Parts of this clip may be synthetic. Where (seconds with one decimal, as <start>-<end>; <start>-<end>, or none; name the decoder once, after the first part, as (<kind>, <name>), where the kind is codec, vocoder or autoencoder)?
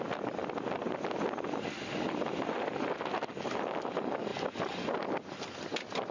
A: none